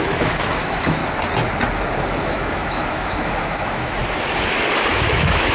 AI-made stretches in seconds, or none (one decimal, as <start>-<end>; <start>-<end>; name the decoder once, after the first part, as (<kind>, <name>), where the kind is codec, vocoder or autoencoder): 0.0-1.0 (autoencoder, DAC-VAE); 2.2-4.0; 4.9-5.5

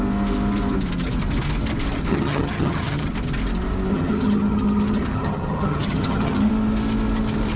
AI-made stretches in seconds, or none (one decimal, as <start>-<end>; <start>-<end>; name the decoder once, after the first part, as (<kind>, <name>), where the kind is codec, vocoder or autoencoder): 2.1-3.1 (vocoder, HiFi-GAN); 3.9-6.5